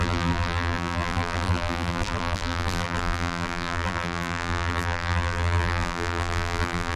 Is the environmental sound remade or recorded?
remade